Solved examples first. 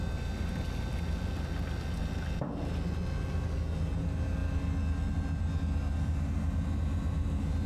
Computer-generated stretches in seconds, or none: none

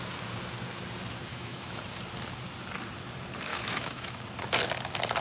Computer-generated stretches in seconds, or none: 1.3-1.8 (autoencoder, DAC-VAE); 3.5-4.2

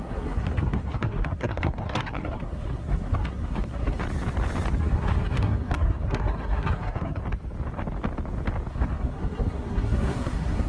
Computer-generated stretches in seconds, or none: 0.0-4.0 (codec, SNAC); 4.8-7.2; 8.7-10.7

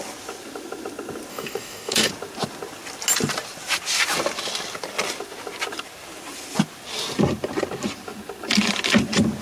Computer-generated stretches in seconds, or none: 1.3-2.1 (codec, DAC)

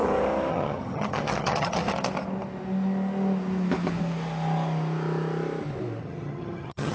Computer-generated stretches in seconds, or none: 0.5-1.9 (vocoder, HiFi-GAN); 6.0-6.9

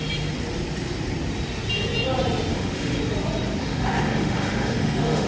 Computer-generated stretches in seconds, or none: 2.5-3.0 (autoencoder, DAC-VAE); 3.6-5.3

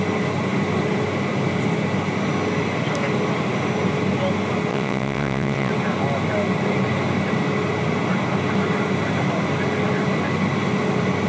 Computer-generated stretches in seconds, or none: 4.7-5.7 (vocoder, WaveNeXt)

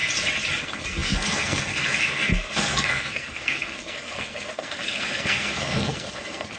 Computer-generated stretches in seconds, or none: 0.6-6.6 (codec, SNAC)